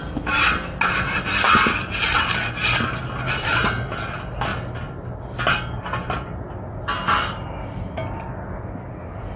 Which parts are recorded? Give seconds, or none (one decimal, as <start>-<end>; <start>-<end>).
0.0-9.4